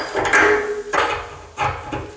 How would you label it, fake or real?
real